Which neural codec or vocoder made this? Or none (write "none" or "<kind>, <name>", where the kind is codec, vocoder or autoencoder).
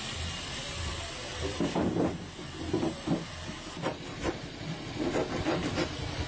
vocoder, BigVGAN v2